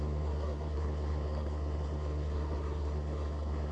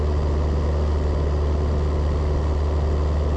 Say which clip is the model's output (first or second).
first